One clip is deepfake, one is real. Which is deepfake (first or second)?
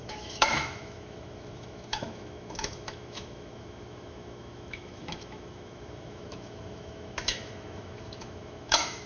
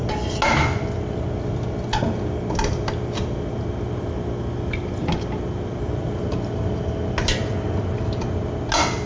first